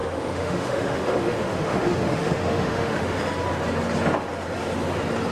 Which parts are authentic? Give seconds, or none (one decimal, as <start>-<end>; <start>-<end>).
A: 3.2-5.3